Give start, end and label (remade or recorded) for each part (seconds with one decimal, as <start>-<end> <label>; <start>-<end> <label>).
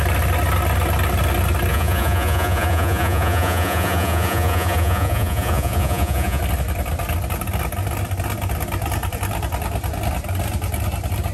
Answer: 0.0-1.7 recorded; 1.7-6.4 remade; 6.4-11.3 recorded